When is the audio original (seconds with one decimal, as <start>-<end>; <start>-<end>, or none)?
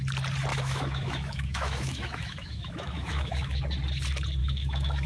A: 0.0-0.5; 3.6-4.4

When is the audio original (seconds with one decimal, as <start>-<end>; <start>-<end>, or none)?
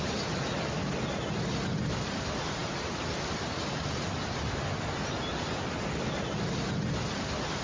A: 0.0-7.6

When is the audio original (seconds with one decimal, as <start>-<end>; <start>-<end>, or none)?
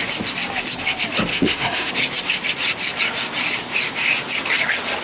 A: 0.0-1.3; 1.9-5.0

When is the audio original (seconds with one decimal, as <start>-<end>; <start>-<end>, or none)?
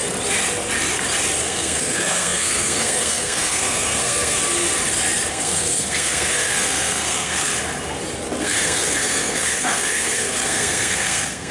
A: 0.0-1.4; 4.4-5.3; 7.5-8.4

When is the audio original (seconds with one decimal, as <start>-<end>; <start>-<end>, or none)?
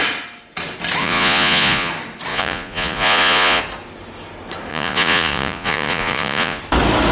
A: 0.0-1.0; 1.9-2.3; 3.6-4.7; 6.6-7.1